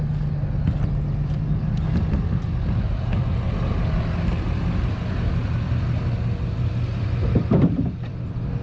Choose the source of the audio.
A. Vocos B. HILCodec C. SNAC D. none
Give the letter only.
D